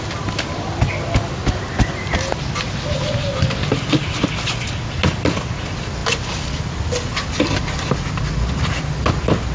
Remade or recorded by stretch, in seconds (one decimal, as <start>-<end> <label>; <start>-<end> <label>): 0.0-9.5 recorded